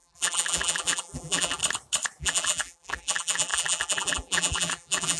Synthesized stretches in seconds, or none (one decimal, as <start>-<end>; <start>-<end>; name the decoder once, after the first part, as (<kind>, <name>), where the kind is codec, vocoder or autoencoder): 0.0-1.6 (vocoder, BigVGAN v2); 2.2-5.2